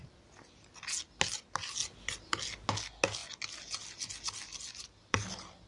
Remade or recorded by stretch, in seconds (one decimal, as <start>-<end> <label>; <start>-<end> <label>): 0.0-5.7 recorded